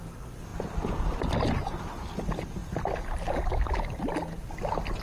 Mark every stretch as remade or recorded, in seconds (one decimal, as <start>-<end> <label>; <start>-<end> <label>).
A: 0.0-5.0 recorded